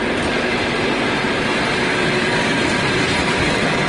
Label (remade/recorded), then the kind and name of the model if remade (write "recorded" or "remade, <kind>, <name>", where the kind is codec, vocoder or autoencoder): recorded